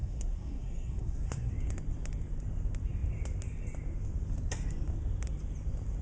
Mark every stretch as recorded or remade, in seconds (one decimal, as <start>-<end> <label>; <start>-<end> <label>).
0.0-1.5 remade; 1.5-6.0 recorded